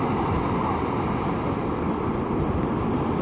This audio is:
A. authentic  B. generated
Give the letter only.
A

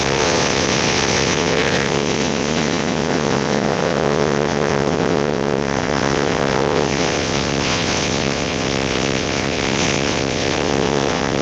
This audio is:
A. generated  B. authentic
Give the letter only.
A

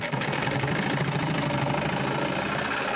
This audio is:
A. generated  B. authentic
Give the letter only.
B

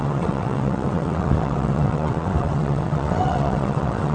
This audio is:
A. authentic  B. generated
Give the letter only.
B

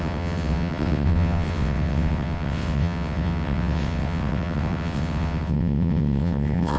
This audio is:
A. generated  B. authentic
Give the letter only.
A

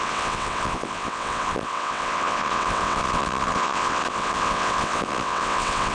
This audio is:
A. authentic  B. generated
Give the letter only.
B